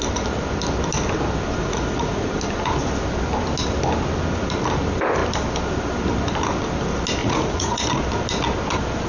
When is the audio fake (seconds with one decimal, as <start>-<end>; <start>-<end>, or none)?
1.6-2.4; 7.2-8.0

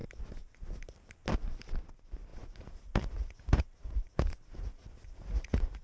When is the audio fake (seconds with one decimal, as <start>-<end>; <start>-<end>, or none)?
2.3-5.8